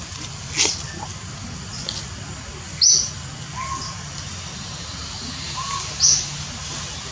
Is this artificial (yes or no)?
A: no